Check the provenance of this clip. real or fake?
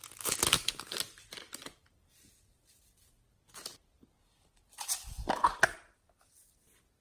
real